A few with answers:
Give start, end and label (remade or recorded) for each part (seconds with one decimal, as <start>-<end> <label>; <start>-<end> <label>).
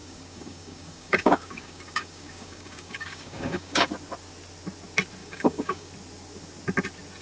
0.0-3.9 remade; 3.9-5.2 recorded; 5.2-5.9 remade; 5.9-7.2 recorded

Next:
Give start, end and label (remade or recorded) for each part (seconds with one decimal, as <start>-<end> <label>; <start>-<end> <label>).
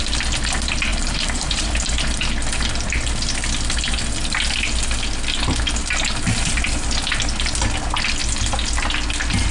0.0-0.9 recorded; 0.9-1.7 remade; 1.7-9.5 recorded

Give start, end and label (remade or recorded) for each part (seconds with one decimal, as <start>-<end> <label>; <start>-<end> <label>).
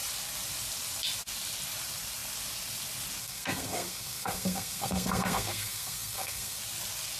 0.0-3.2 recorded; 3.2-6.6 remade; 6.6-7.2 recorded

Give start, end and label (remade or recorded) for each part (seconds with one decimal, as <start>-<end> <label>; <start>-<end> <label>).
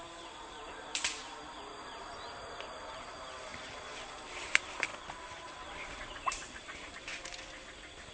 0.0-4.9 remade; 4.9-5.4 recorded; 5.4-7.1 remade; 7.1-8.1 recorded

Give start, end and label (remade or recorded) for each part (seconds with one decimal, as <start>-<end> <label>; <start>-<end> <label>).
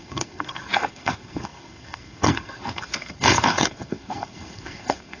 0.0-5.2 remade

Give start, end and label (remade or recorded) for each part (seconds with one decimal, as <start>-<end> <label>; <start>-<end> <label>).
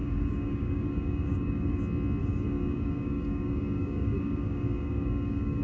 0.0-1.8 remade; 1.8-2.2 recorded; 2.2-5.6 remade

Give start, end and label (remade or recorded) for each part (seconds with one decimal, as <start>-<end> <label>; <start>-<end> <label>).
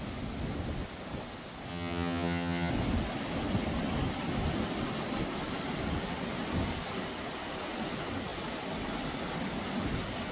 0.0-1.7 recorded; 1.7-2.7 remade; 2.7-10.3 recorded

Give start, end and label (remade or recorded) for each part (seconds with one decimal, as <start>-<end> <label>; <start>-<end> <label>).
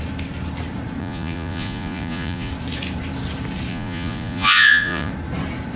0.0-1.0 recorded; 1.0-2.5 remade; 2.5-3.7 recorded; 3.7-5.1 remade; 5.1-5.8 recorded